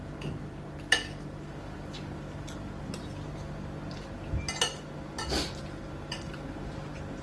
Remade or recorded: recorded